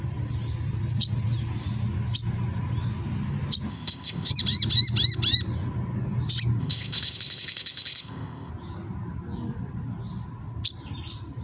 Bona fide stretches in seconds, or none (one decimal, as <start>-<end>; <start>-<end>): 0.0-3.7; 4.3-6.6; 8.5-11.4